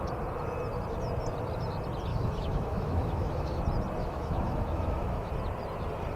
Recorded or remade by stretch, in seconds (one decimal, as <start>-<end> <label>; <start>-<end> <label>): 0.0-2.1 recorded; 2.1-3.6 remade; 3.6-4.0 recorded; 4.0-5.3 remade; 5.3-6.2 recorded